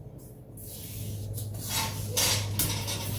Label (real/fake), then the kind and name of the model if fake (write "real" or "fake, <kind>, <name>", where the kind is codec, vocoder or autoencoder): real